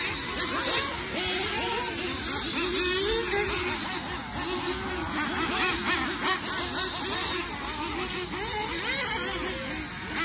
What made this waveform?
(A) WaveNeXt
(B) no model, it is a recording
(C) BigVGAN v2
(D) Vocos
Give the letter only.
B